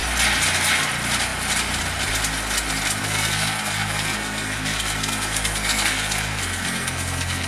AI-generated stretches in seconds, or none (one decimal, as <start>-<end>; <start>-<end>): 3.0-7.5